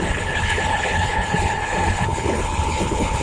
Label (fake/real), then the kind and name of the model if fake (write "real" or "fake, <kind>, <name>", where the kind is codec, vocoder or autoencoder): fake, codec, HILCodec